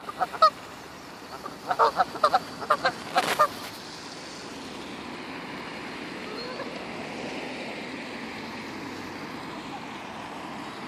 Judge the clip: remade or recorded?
recorded